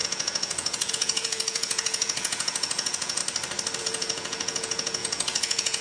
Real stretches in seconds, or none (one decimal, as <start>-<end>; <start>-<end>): 3.2-3.8